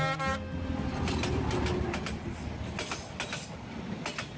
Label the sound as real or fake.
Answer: real